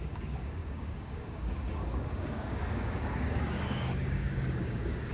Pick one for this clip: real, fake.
fake